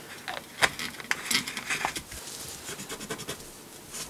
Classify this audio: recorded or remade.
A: recorded